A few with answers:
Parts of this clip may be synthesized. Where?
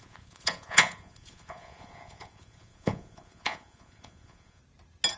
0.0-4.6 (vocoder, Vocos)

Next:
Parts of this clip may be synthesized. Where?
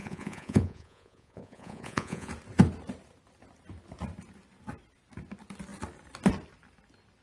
0.0-2.3 (vocoder, Vocos)